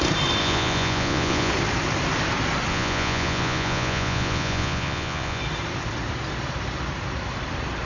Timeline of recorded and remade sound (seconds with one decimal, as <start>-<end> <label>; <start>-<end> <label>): 0.0-0.4 recorded; 0.4-1.5 remade; 1.5-2.7 recorded; 2.7-5.4 remade; 5.4-7.9 recorded